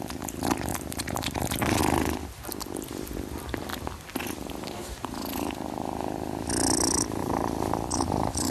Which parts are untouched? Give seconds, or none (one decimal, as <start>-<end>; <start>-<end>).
0.0-0.7; 1.8-7.2